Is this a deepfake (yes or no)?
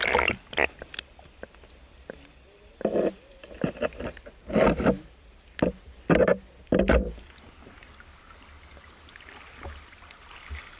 no